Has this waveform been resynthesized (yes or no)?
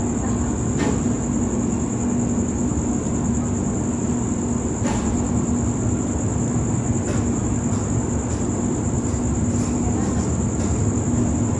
no